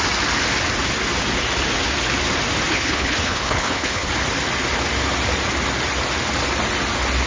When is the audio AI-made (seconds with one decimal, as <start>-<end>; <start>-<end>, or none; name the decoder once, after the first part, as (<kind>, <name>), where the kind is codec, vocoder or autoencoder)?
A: 2.7-4.1 (codec, HILCodec)